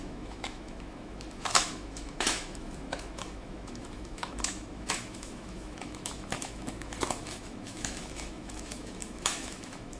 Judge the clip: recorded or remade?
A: remade